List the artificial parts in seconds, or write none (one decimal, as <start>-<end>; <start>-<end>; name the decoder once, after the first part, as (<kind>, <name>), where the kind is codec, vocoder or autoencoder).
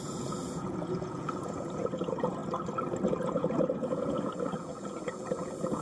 0.0-2.4 (vocoder, Vocos); 3.1-5.8